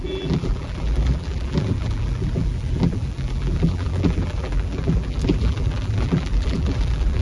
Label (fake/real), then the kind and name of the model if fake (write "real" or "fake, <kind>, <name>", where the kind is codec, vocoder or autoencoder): fake, vocoder, BigVGAN v2